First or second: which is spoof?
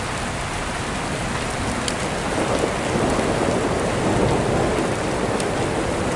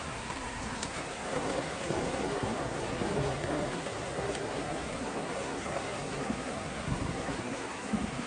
second